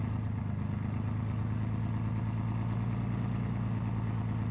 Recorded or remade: recorded